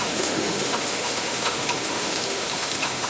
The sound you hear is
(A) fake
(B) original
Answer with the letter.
A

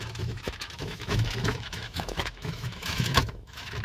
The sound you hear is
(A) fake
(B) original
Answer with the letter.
A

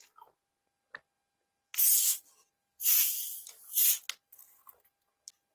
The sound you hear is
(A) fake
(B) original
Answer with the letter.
B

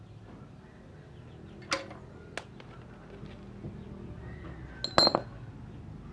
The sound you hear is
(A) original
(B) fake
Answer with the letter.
A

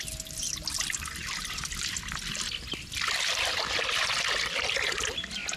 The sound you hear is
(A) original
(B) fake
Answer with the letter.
A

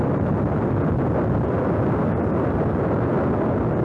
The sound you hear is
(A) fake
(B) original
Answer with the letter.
B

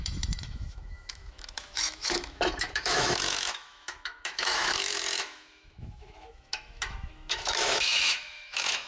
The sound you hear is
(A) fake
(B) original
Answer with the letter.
A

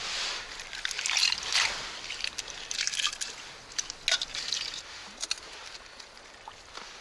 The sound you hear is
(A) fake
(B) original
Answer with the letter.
B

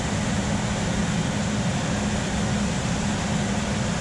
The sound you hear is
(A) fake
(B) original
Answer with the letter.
B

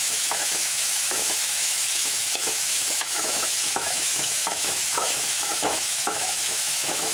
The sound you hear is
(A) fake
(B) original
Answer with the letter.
A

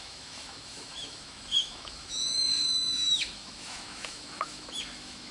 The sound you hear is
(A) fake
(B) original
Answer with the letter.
A